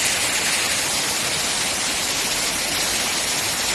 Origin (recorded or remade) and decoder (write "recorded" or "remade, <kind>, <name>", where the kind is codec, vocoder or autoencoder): recorded